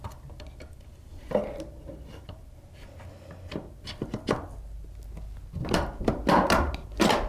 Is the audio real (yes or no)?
yes